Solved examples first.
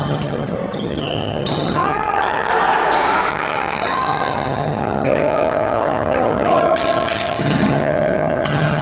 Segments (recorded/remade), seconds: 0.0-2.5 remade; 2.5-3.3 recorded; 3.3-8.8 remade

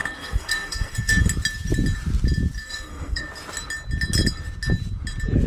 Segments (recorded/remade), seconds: 0.0-1.2 remade; 1.2-2.6 recorded; 2.6-3.3 remade; 3.3-5.5 recorded

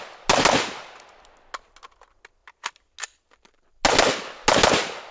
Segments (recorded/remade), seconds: 0.0-5.1 recorded

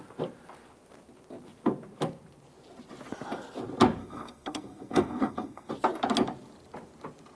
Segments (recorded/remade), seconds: 0.0-4.0 recorded; 4.0-5.7 remade; 5.7-7.3 recorded

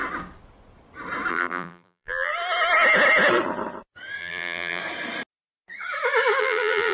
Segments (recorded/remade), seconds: 0.0-1.3 recorded; 1.3-2.3 remade; 2.3-4.2 recorded; 4.2-4.8 remade; 4.8-6.4 recorded; 6.4-6.9 remade

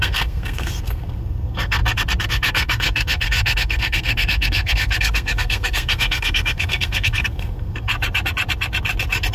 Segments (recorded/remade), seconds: 0.0-1.8 remade; 1.8-2.3 recorded; 2.3-7.9 remade; 7.9-9.3 recorded

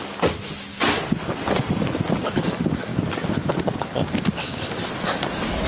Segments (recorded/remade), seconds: 0.0-2.9 recorded; 2.9-3.5 remade; 3.5-5.7 recorded